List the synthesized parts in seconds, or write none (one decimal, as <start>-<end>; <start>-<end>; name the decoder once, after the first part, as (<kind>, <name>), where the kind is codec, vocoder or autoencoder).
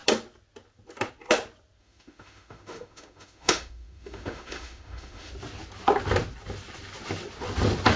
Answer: 1.8-5.3 (autoencoder, DAC-VAE)